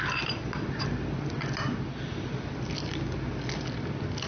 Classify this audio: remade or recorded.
recorded